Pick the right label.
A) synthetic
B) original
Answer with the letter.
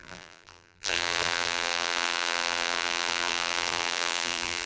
A